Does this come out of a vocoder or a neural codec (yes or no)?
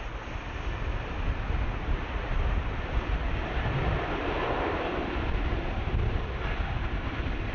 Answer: no